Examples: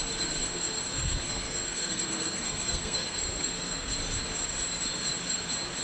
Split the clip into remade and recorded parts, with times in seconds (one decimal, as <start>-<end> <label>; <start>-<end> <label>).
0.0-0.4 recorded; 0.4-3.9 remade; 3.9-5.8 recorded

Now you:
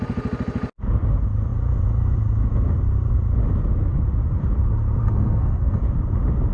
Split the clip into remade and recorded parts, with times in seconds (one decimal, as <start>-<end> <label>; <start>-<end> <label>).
0.0-5.0 recorded; 5.0-5.8 remade; 5.8-6.5 recorded

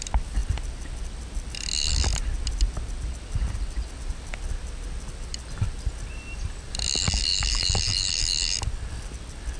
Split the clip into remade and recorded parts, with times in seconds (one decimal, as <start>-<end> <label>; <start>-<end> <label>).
0.0-9.6 recorded